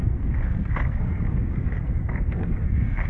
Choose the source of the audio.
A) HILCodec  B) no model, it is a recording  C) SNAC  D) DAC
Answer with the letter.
C